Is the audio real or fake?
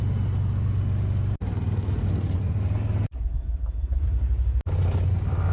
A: real